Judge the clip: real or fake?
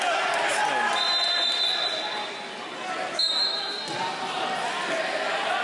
real